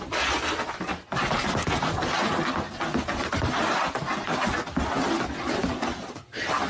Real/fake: real